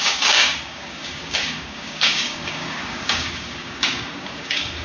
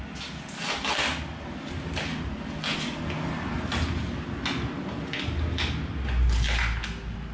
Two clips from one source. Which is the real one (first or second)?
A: second